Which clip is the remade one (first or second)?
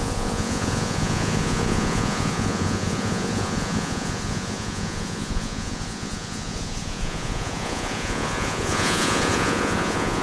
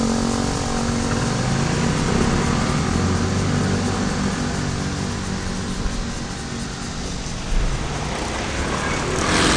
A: first